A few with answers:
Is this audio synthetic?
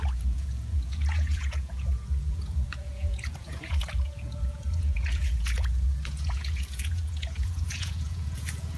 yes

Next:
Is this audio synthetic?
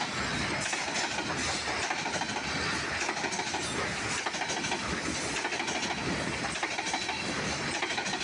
no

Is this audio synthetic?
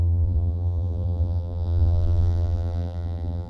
yes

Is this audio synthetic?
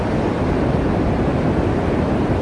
no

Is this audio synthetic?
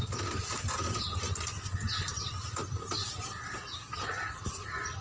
no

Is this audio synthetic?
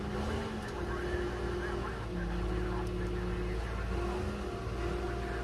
no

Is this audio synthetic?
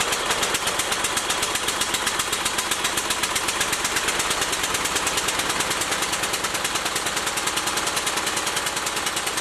no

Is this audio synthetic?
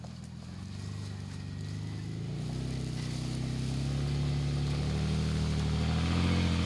no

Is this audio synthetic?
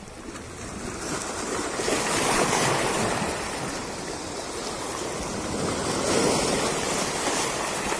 no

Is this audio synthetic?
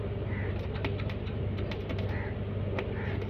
no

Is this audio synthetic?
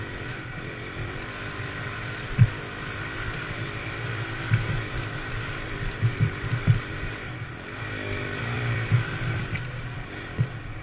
yes